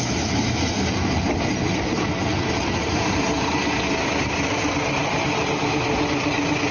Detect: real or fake real